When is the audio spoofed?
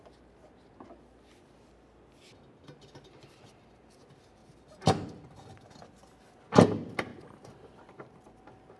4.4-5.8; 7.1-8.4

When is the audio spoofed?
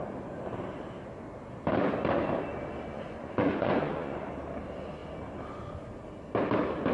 2.9-4.3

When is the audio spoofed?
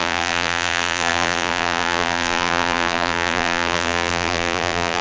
0.0-5.0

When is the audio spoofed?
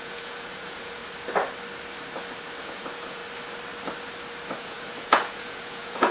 0.0-1.0; 2.6-3.2; 4.5-6.1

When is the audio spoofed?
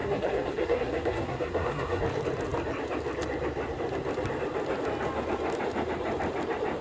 0.0-2.0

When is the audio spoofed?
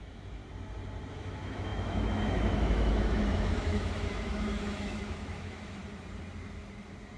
0.0-0.4; 1.1-5.8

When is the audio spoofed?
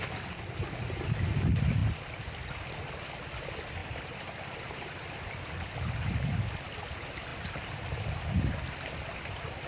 3.8-5.4; 7.3-8.5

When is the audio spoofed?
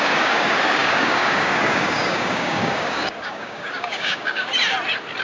0.0-4.5